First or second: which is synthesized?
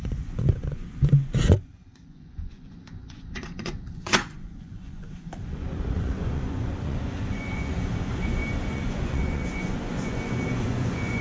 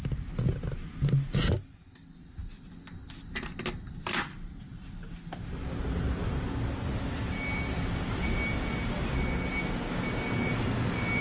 first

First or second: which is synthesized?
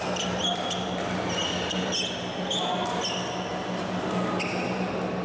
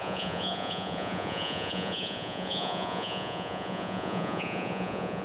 second